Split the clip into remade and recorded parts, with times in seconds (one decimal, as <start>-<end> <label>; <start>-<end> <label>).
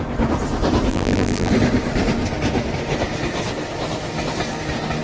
0.0-0.9 recorded; 0.9-1.5 remade; 1.5-5.0 recorded